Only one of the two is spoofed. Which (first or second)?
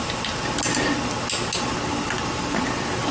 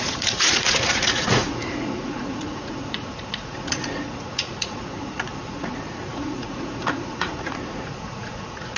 second